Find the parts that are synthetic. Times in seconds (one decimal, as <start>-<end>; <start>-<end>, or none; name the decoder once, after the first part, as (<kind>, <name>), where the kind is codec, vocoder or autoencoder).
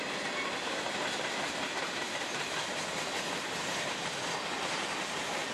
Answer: 0.6-3.9 (vocoder, BigVGAN v2)